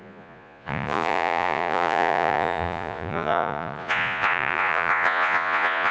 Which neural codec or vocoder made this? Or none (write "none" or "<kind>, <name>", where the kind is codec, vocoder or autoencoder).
vocoder, Vocos